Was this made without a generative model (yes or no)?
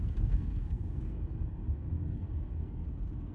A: no